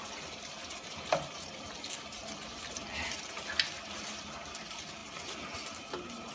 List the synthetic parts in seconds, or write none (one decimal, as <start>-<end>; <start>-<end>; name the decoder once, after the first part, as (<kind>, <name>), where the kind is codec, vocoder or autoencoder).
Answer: none